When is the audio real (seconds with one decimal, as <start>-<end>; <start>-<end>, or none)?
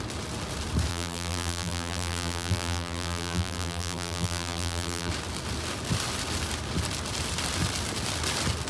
0.0-0.9; 5.1-8.7